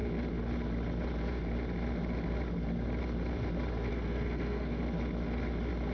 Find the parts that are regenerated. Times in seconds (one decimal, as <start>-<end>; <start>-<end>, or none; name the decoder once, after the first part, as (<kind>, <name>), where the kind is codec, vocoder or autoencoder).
3.9-4.8 (codec, SNAC)